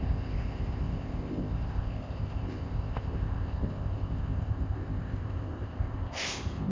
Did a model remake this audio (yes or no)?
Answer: yes